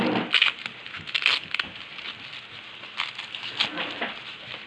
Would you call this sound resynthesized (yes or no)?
no